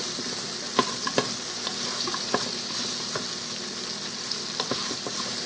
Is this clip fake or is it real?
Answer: real